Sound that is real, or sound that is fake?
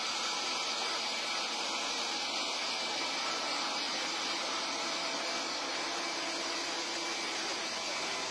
real